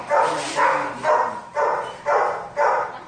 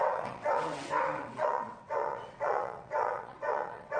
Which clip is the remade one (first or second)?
second